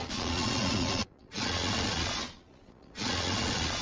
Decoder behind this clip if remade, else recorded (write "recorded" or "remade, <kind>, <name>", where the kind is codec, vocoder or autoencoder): remade, vocoder, Vocos